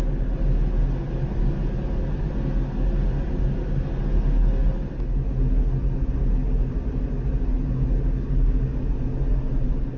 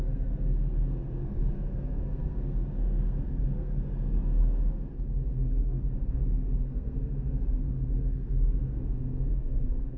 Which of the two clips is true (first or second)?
first